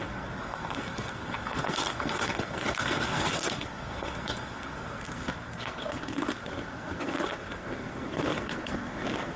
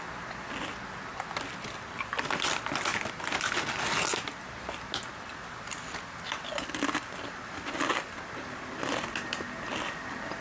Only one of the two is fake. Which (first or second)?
first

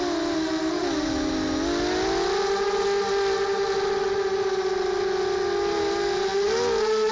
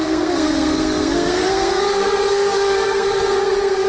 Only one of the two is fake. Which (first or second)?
second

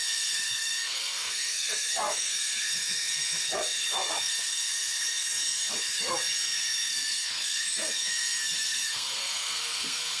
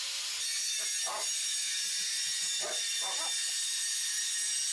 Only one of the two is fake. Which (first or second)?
first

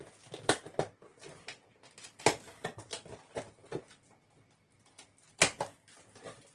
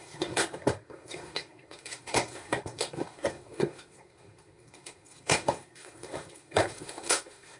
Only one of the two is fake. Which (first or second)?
second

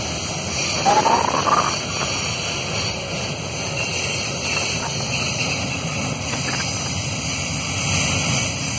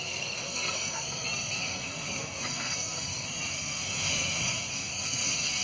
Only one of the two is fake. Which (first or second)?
second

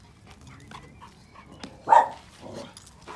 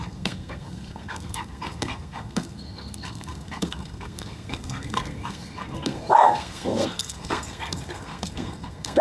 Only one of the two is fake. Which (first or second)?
second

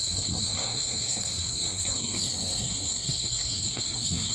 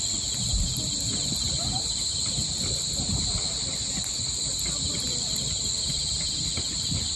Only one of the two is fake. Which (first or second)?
first